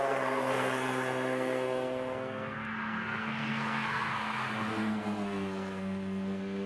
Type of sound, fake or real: fake